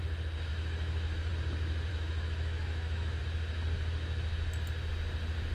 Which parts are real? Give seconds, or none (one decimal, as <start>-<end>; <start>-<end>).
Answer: 0.0-0.5; 1.3-1.9; 3.2-5.5